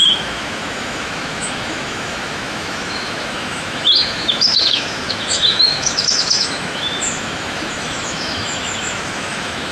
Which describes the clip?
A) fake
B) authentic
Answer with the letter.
A